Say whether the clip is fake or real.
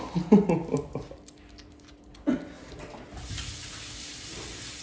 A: real